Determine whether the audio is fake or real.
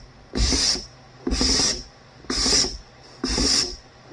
real